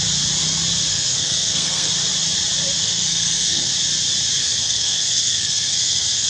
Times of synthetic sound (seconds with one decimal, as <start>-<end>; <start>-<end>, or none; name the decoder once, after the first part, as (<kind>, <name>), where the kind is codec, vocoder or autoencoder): 0.9-1.9 (codec, SNAC); 2.8-3.7; 4.4-6.3